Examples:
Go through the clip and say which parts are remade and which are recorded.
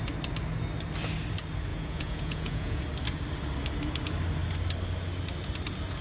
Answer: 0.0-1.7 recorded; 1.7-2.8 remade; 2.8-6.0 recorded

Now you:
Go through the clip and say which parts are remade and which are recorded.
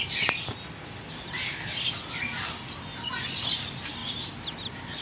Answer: 0.0-5.0 recorded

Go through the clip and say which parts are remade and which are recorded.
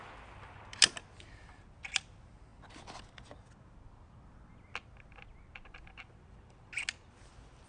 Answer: 0.0-7.7 recorded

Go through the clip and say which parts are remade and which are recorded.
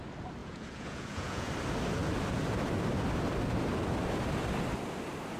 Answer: 0.0-0.4 recorded; 0.4-1.5 remade; 1.5-5.4 recorded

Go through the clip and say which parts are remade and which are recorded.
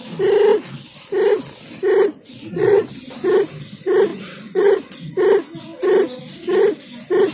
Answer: 0.0-2.1 recorded; 2.1-2.9 remade; 2.9-4.1 recorded; 4.1-5.1 remade; 5.1-7.3 recorded